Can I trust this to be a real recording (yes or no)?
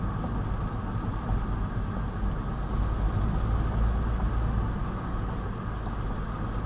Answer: yes